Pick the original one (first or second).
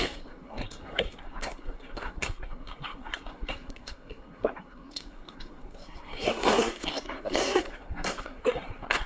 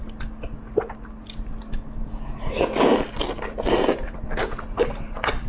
second